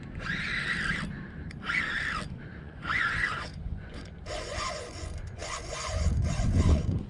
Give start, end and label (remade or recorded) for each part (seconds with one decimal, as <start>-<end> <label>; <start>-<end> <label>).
0.0-0.5 remade; 0.5-2.6 recorded; 2.6-7.1 remade